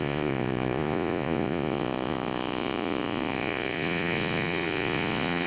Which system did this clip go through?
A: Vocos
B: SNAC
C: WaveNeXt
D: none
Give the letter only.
A